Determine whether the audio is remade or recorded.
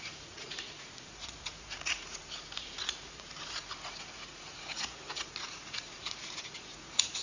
remade